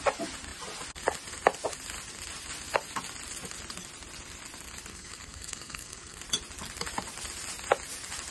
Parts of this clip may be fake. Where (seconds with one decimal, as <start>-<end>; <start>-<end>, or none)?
4.9-6.2